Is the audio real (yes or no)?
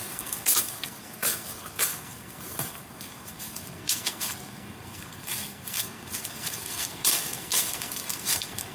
no